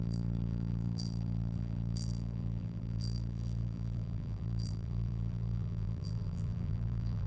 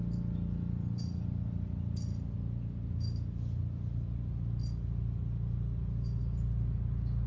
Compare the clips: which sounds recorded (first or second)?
second